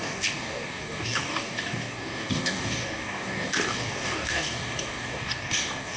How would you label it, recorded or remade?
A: remade